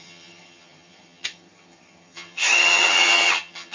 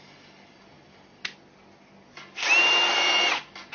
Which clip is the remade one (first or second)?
first